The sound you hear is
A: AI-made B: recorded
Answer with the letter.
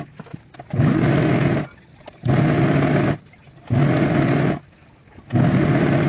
B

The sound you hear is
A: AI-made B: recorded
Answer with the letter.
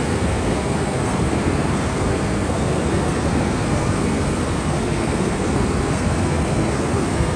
A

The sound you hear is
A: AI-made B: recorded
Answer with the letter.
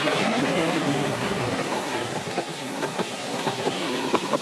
A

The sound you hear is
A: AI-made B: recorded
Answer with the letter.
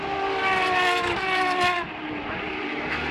B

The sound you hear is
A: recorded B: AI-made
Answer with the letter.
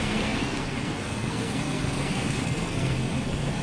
B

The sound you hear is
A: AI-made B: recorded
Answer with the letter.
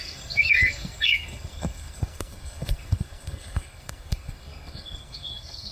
A